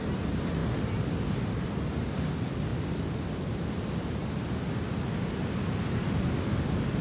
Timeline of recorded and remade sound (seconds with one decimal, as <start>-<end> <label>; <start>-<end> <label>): 0.0-2.7 recorded; 2.7-4.1 remade; 4.1-7.0 recorded